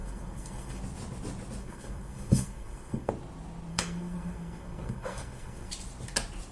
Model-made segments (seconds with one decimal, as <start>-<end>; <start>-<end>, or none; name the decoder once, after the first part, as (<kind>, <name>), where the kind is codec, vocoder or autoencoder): 0.0-0.8 (codec, SNAC); 1.6-3.1; 3.7-5.7